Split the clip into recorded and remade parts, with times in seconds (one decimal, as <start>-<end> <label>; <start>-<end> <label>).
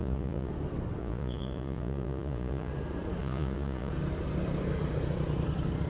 0.0-0.5 remade; 0.5-1.0 recorded; 1.0-2.7 remade; 2.7-3.2 recorded; 3.2-3.9 remade; 3.9-5.9 recorded